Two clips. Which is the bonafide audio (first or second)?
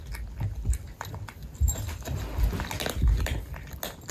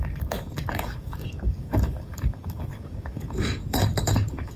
first